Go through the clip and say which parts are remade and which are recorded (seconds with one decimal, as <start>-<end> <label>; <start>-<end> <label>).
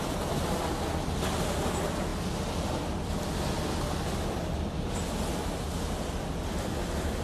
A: 0.0-7.2 recorded